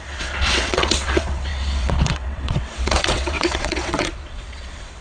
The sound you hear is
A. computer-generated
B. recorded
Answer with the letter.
A